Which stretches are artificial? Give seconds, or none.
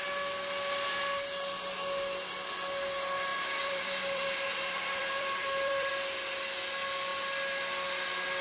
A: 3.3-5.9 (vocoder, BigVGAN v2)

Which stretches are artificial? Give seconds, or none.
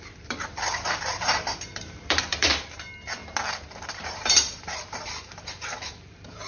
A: 0.0-3.2 (vocoder, BigVGAN v2); 3.9-6.5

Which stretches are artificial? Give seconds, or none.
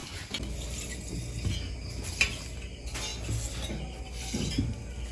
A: none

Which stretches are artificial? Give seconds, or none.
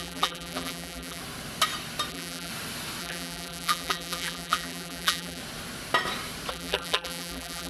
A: 0.0-1.2 (vocoder, BigVGAN v2); 2.1-2.5; 3.0-5.4; 6.5-7.7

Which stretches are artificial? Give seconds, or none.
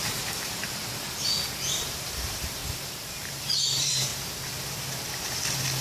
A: 0.0-0.8 (vocoder, BigVGAN v2); 1.6-2.6; 3.1-4.1